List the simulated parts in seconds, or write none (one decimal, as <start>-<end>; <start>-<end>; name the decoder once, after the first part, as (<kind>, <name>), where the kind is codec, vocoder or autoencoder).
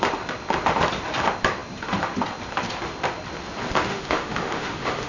3.9-5.1 (autoencoder, DAC-VAE)